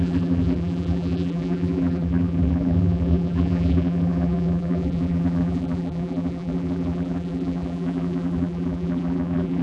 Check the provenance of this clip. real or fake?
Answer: fake